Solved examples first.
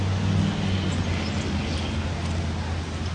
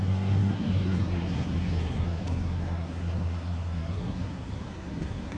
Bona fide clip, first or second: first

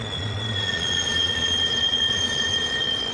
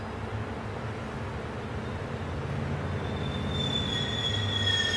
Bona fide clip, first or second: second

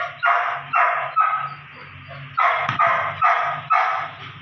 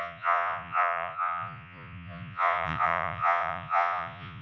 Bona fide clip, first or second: first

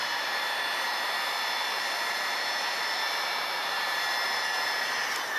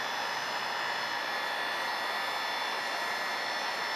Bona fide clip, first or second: second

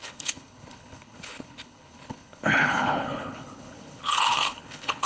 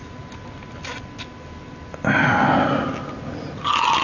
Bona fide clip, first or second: second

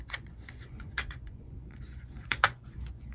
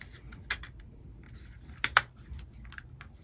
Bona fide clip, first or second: second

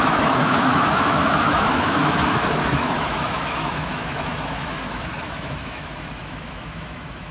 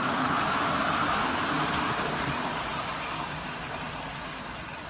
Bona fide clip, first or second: second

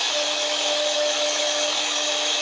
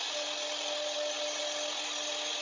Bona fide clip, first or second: second